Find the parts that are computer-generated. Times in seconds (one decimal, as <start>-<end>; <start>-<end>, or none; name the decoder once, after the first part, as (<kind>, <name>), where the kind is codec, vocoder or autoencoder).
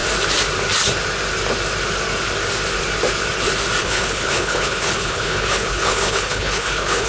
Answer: 3.8-7.1 (codec, HILCodec)